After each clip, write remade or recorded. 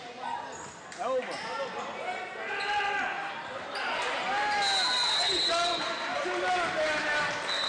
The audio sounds recorded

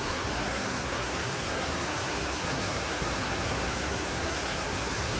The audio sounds remade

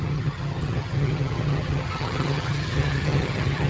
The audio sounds remade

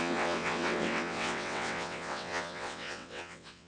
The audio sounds remade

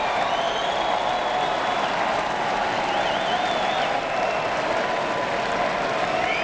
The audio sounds recorded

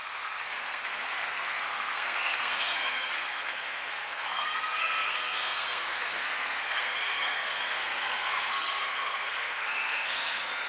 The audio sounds remade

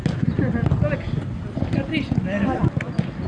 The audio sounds recorded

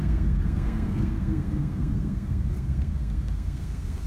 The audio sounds remade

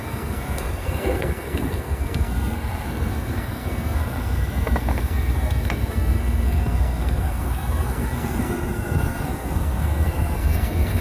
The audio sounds remade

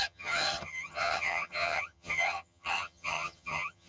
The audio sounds remade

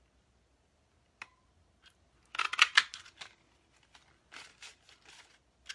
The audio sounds recorded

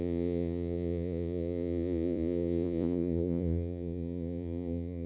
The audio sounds remade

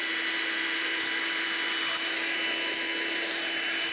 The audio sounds recorded